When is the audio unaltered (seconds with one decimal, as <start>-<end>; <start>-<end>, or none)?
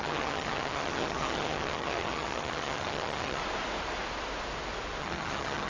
3.4-5.0